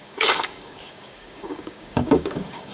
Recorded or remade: remade